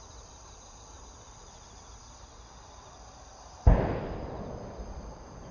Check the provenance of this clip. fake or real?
fake